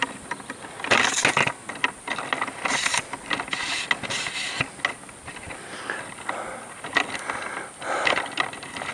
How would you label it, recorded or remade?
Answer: recorded